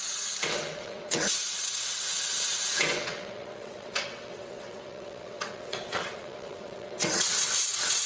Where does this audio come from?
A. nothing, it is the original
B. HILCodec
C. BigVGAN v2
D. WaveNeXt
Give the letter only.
D